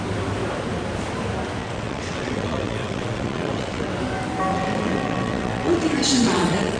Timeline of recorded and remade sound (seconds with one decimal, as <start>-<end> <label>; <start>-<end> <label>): 0.0-1.6 recorded; 1.6-3.9 remade; 3.9-4.5 recorded; 4.5-6.8 remade